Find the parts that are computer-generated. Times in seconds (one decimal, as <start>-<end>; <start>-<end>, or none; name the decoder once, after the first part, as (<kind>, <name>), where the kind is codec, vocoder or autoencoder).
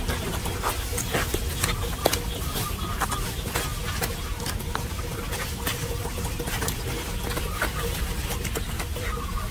none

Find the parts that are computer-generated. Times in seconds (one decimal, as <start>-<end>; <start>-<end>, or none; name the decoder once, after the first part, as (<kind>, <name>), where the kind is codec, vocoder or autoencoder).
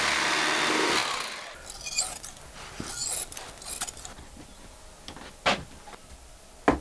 none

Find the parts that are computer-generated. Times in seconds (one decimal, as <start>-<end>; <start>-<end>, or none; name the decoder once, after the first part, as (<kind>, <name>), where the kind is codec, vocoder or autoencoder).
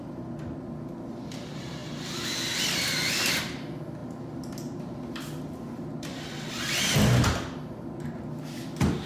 none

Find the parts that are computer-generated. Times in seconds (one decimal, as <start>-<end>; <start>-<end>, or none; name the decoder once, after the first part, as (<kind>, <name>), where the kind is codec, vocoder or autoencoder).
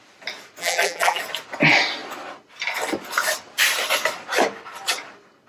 0.6-1.2 (vocoder, BigVGAN v2)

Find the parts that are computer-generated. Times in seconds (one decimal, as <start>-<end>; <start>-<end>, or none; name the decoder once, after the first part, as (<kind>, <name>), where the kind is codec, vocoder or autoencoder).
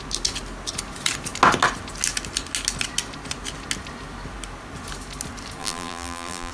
5.6-6.5 (vocoder, BigVGAN v2)